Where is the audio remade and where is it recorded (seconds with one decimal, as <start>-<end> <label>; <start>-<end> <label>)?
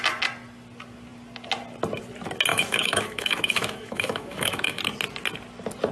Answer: 0.0-2.5 recorded; 2.5-4.8 remade; 4.8-5.9 recorded